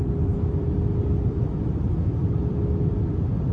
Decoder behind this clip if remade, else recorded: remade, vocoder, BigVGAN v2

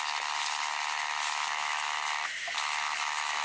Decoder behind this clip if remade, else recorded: recorded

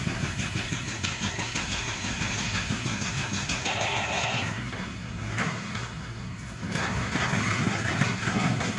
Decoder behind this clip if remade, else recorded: remade, codec, SNAC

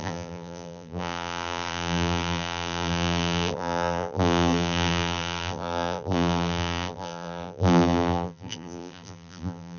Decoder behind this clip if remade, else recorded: remade, vocoder, BigVGAN v2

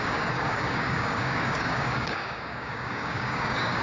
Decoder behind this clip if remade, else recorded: remade, codec, DAC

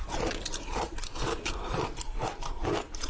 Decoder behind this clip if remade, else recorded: remade, vocoder, BigVGAN v2